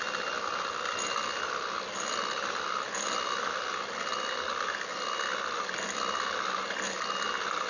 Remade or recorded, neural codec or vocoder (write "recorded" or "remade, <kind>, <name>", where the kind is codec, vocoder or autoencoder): recorded